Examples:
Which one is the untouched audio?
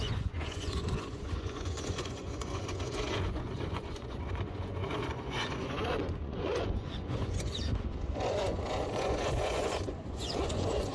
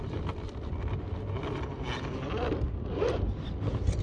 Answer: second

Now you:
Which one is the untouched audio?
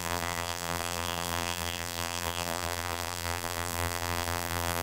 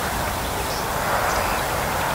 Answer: second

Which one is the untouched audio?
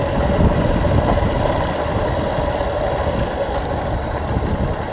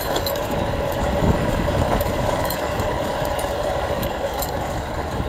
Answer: first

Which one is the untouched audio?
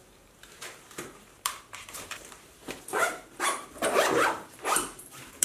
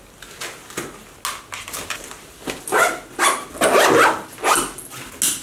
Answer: second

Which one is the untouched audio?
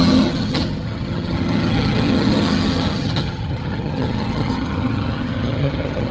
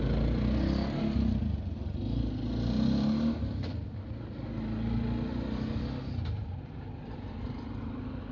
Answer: second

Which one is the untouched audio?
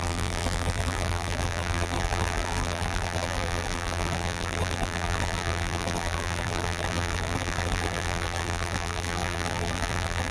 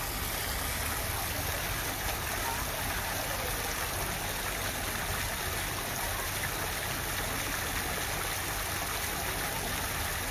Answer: second